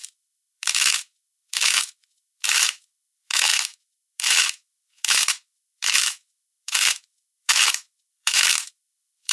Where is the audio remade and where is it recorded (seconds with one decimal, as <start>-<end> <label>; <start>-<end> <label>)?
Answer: 0.0-9.3 remade